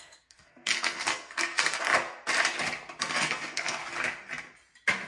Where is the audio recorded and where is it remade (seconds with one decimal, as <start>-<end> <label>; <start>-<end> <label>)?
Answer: 0.0-1.9 remade; 1.9-3.0 recorded; 3.0-3.8 remade; 3.8-5.1 recorded